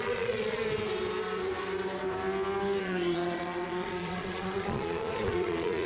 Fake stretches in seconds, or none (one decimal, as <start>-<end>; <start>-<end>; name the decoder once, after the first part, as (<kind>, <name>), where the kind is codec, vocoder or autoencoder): 0.0-0.6 (vocoder, Vocos); 2.8-5.9